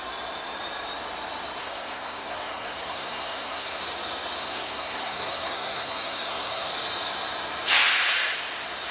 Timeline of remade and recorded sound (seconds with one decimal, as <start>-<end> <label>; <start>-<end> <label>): 0.0-1.6 recorded; 1.6-3.8 remade; 3.8-4.4 recorded; 4.4-6.7 remade; 6.7-8.9 recorded